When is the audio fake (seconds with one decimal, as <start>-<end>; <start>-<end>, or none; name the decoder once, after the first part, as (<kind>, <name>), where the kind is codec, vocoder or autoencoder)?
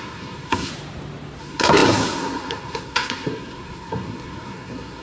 0.0-0.7 (codec, SNAC); 1.4-5.0